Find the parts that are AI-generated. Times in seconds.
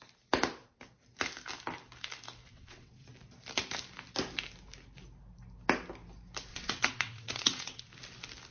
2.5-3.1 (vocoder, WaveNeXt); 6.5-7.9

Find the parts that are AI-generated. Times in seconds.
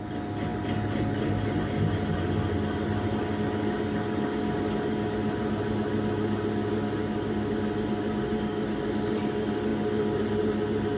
none